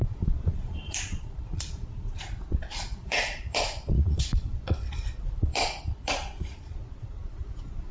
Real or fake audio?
fake